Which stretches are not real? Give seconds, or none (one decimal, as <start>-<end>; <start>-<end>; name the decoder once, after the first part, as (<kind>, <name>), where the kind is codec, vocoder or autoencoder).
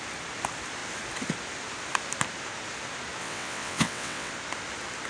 3.2-4.3 (vocoder, WaveNeXt)